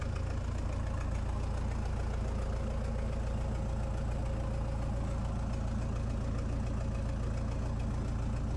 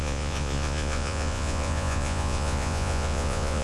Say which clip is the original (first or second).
first